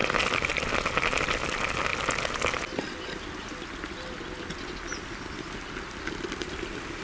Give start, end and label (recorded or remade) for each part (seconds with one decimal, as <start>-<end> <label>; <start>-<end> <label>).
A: 0.0-7.0 recorded